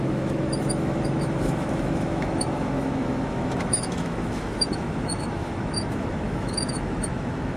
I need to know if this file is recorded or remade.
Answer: remade